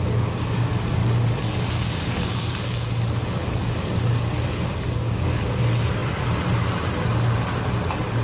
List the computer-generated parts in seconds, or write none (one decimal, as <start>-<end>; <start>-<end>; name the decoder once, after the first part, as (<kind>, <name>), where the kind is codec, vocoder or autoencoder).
1.0-5.6 (codec, DAC)